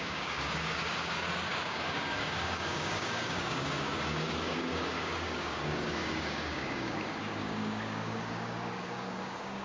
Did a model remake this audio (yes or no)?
yes